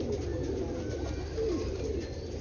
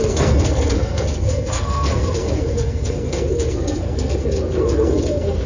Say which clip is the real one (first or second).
first